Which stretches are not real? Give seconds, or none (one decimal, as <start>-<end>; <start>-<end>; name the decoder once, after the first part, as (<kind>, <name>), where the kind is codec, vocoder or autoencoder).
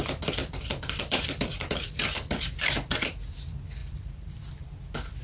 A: 0.4-3.4 (vocoder, BigVGAN v2); 3.8-4.4